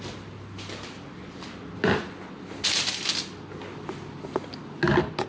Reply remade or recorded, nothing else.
recorded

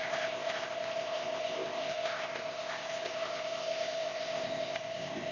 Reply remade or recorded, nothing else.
remade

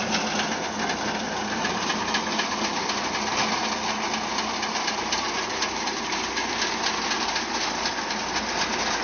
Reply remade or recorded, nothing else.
recorded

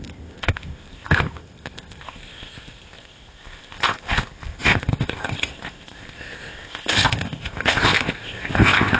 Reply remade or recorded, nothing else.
remade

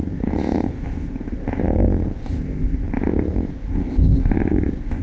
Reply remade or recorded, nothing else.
remade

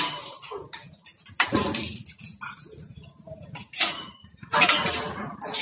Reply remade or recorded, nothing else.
recorded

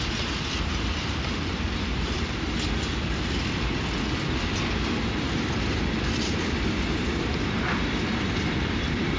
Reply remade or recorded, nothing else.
recorded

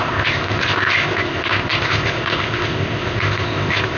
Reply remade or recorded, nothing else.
remade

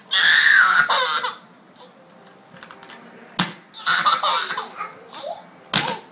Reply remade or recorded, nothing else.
recorded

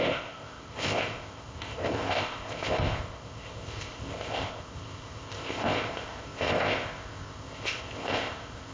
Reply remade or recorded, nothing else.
remade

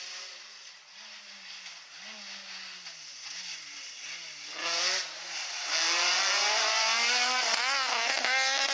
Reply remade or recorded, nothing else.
recorded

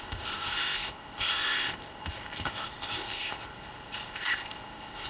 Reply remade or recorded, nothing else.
remade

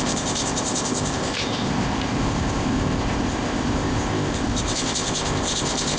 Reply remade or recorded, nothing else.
remade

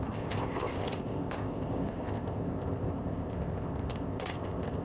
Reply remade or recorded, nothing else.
remade